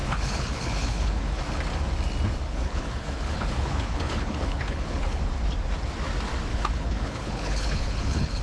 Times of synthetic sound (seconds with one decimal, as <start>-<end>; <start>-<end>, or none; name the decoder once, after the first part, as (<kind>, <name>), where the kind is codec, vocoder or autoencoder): 0.0-1.4 (codec, HILCodec); 2.4-5.2; 6.5-8.4